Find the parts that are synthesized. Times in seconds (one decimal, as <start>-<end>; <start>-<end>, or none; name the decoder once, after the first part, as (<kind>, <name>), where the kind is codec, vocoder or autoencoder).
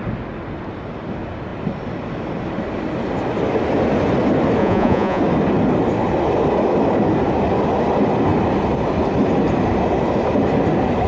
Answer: 4.6-5.2 (vocoder, Vocos)